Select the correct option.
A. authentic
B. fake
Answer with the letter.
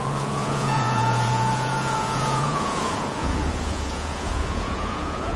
B